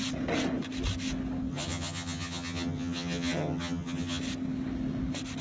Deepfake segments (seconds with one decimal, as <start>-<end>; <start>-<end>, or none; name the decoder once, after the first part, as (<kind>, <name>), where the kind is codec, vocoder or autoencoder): 1.5-4.2 (vocoder, HiFi-GAN)